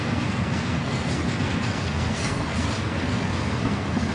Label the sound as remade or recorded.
remade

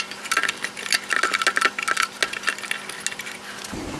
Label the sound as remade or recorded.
recorded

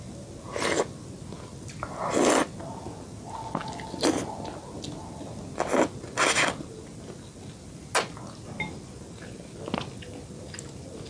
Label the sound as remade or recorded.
recorded